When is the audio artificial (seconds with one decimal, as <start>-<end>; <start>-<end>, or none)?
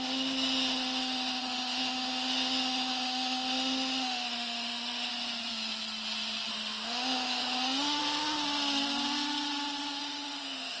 0.0-5.1; 6.5-8.0; 10.0-10.8